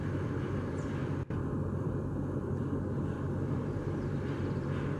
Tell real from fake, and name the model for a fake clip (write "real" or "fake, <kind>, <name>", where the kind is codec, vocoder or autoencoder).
fake, vocoder, BigVGAN v2